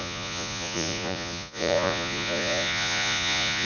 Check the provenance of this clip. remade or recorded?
remade